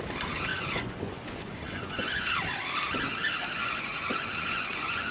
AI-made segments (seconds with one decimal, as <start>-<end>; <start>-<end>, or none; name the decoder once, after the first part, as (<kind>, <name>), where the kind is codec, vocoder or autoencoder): 0.5-2.3 (vocoder, Vocos); 3.6-5.1